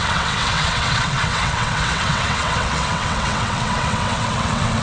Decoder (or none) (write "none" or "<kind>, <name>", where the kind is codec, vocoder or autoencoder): vocoder, WaveNeXt